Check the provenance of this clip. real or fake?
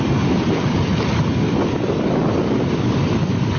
real